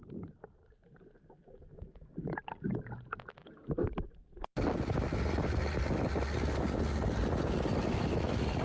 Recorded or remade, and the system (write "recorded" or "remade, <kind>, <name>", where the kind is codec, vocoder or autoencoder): recorded